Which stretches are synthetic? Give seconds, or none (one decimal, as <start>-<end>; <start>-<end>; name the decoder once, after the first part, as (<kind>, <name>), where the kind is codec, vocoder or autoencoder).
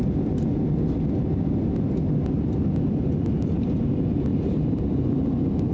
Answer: 4.3-5.1 (vocoder, BigVGAN v2)